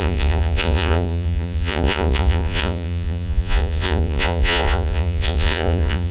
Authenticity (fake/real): fake